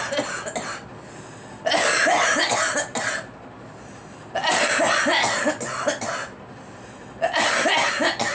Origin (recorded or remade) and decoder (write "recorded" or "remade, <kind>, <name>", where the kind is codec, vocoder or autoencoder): recorded